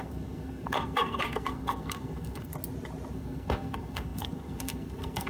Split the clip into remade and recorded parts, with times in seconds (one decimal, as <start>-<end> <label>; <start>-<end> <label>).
0.0-2.5 remade; 2.5-3.1 recorded; 3.1-5.3 remade